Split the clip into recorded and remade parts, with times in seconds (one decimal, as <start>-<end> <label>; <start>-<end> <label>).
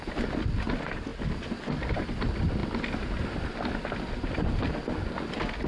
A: 0.0-5.7 recorded